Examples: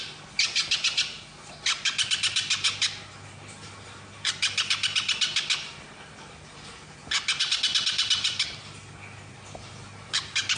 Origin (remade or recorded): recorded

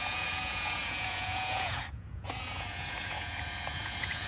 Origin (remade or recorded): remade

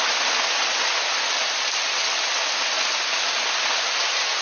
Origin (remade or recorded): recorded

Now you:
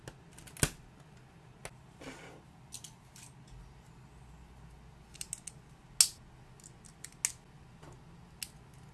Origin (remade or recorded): recorded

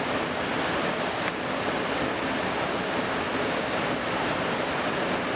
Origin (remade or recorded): recorded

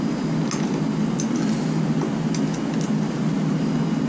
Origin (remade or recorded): recorded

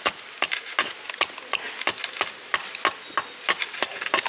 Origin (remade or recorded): recorded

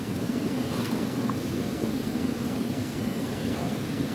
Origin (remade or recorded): remade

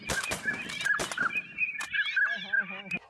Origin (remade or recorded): recorded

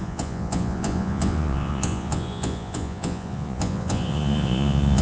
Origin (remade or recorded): remade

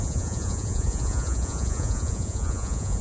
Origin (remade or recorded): remade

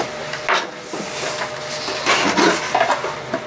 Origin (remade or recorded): recorded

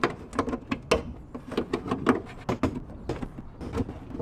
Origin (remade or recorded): recorded